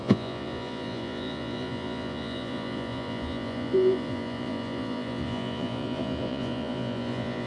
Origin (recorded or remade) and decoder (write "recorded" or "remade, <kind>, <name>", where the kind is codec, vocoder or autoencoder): remade, vocoder, Vocos